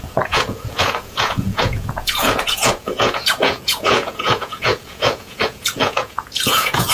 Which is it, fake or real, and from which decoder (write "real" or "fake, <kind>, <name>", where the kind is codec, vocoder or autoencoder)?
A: fake, vocoder, Vocos